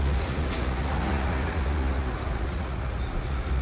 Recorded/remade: remade